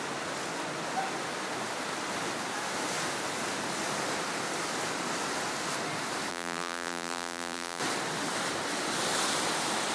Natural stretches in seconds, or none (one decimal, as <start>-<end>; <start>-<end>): 0.0-6.3; 7.8-9.9